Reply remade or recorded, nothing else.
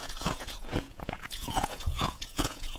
remade